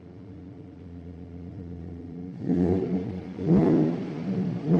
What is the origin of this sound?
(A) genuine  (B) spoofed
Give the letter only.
B